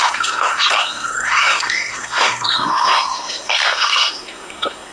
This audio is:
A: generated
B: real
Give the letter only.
A